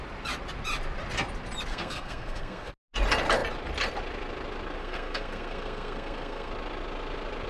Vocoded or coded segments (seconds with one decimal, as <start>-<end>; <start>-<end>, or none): 1.7-2.7; 4.8-6.5